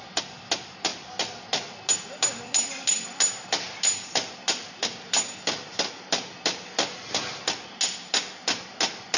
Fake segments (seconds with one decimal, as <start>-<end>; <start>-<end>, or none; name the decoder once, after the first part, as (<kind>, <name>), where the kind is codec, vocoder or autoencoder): none